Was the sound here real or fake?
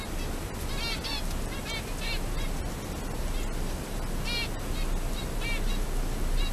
real